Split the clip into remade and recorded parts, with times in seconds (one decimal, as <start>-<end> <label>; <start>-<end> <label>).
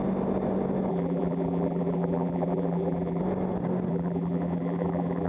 0.0-0.9 recorded; 0.9-3.2 remade; 3.2-3.9 recorded; 3.9-5.3 remade